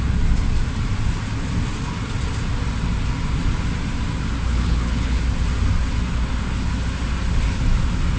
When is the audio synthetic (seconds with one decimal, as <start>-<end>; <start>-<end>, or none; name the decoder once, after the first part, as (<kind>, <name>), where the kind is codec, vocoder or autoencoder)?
4.5-5.2 (codec, HILCodec)